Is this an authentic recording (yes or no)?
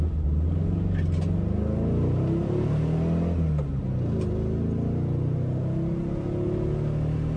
yes